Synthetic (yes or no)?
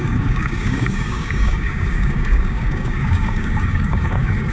yes